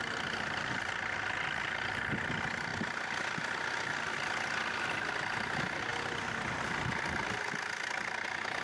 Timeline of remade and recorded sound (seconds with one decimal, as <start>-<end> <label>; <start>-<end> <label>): 0.0-8.6 recorded